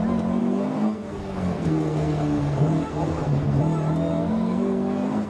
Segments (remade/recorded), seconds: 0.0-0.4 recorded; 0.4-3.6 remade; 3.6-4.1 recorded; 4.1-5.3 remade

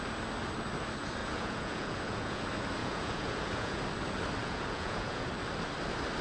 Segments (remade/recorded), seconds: 0.0-1.2 recorded; 1.2-2.4 remade; 2.4-2.8 recorded; 2.8-3.8 remade; 3.8-4.4 recorded; 4.4-5.3 remade; 5.3-6.2 recorded

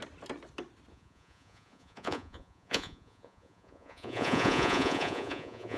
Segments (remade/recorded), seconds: 0.0-0.9 recorded; 0.9-5.8 remade

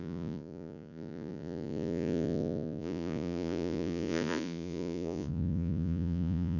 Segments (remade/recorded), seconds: 0.0-6.6 remade

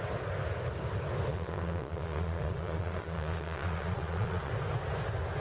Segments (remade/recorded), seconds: 0.0-1.3 recorded; 1.3-4.5 remade; 4.5-5.4 recorded